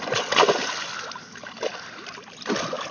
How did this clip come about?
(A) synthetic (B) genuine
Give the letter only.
B